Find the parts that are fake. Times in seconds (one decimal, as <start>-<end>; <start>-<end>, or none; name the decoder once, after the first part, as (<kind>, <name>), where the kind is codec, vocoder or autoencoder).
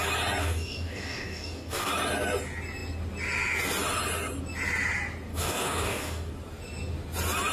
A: 0.4-1.9 (codec, DAC); 5.3-6.3